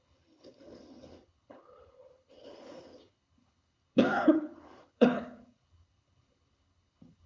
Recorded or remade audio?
remade